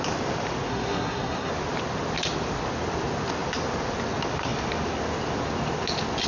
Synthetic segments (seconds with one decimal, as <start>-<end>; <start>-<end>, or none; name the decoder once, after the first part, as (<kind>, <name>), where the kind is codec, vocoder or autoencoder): 0.7-1.5 (codec, SNAC)